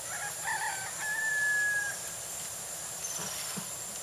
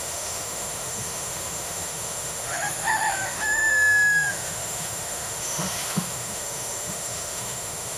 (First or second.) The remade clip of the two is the second